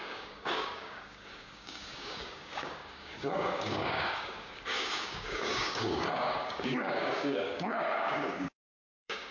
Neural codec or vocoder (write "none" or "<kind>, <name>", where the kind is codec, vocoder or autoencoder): codec, DAC